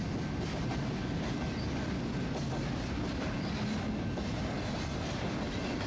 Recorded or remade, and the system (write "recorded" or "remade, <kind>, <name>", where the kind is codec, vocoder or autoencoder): recorded